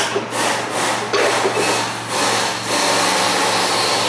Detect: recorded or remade recorded